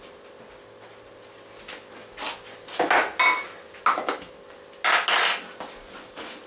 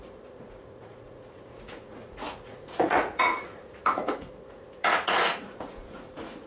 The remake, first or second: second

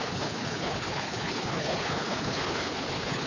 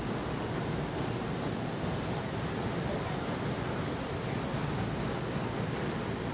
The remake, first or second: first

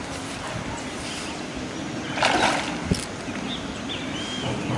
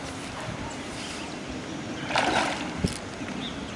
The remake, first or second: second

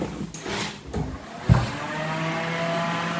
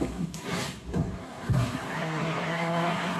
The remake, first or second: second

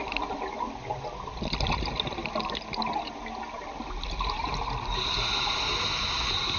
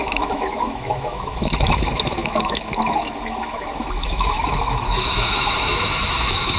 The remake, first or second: second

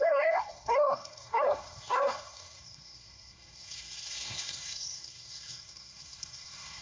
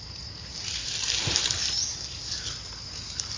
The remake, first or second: first